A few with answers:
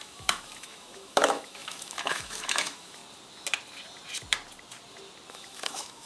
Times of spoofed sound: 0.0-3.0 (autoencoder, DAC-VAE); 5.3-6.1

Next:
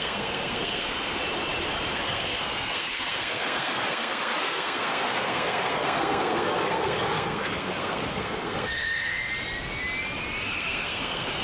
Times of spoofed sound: 0.0-1.2 (codec, SNAC); 1.9-9.3; 10.5-11.4

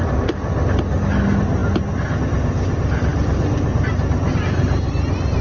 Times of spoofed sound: none

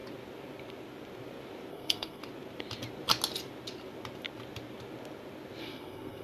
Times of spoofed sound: 1.7-2.2 (codec, SNAC); 5.6-6.2

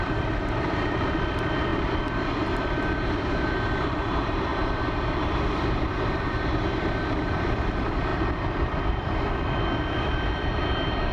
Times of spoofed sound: 0.0-1.7 (vocoder, BigVGAN v2); 3.3-4.5; 5.8-11.1

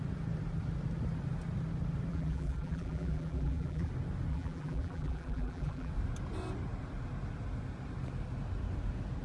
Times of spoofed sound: 2.1-3.9 (vocoder, BigVGAN v2); 4.3-5.9

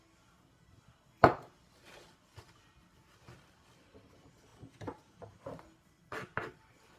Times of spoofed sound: none

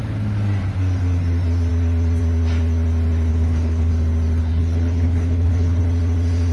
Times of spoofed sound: 3.3-3.9 (codec, HILCodec); 4.4-5.8